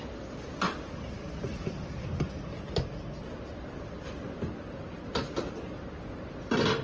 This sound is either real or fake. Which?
real